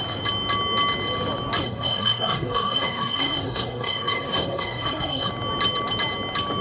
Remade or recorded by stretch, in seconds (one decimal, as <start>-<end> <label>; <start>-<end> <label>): 0.0-1.6 recorded; 1.6-5.3 remade; 5.3-6.6 recorded